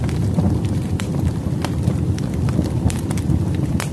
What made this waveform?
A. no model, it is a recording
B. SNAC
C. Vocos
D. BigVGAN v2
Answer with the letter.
D